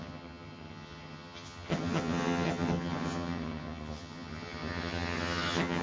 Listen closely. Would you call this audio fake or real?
fake